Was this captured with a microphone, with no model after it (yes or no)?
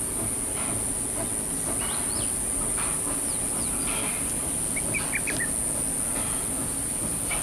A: yes